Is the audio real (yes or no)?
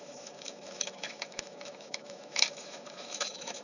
no